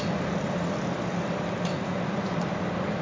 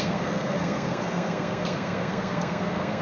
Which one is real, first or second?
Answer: first